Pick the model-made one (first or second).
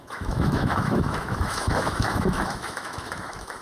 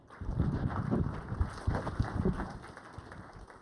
first